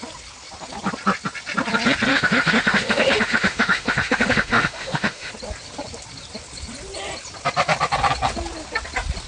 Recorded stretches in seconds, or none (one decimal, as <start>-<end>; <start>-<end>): 0.0-2.1; 5.3-9.3